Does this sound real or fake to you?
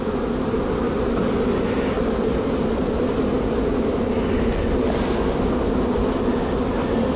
real